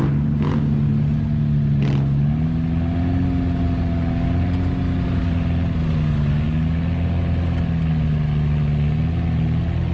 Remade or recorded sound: recorded